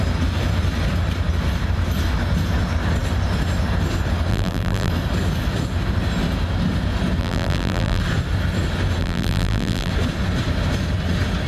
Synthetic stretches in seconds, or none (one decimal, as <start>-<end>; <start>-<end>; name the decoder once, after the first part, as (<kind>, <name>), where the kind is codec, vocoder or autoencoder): 4.3-4.9 (vocoder, BigVGAN v2); 7.2-8.0; 9.0-9.9